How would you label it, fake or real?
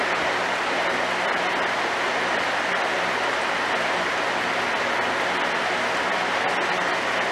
real